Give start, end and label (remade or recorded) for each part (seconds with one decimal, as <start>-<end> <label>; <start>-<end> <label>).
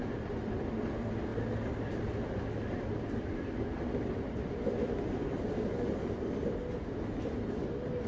0.0-8.1 recorded